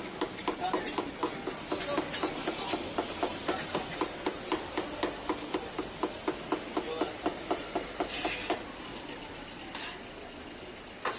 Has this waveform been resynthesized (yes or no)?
no